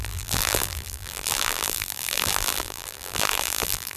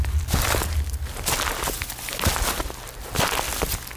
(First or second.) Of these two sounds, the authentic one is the second